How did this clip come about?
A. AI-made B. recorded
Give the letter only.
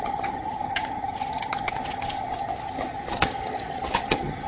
A